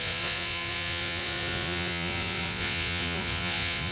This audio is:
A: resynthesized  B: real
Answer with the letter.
A